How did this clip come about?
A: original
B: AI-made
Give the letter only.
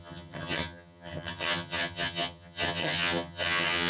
B